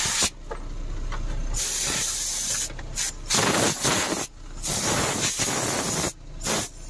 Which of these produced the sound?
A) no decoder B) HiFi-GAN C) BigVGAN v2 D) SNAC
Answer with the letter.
A